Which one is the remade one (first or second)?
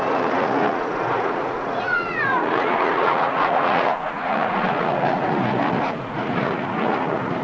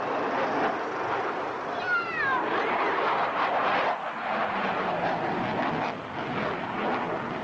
first